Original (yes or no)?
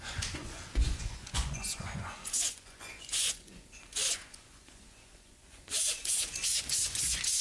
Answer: no